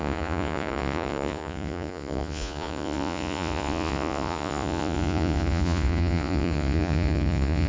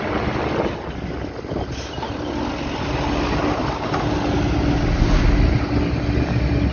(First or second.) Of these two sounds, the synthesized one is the first